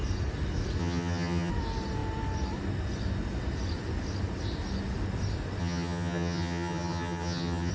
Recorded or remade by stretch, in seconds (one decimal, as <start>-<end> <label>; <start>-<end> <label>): 0.0-0.8 recorded; 0.8-1.5 remade; 1.5-5.6 recorded; 5.6-7.7 remade